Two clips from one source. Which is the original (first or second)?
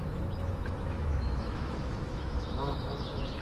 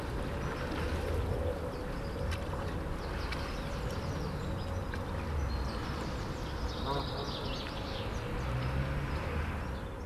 second